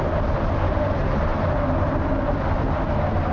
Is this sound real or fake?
real